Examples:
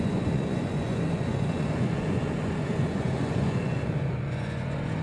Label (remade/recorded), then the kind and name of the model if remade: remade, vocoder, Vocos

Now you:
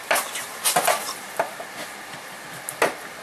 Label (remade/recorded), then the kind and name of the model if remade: recorded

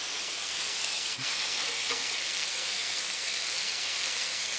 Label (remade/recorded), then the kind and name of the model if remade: remade, codec, SNAC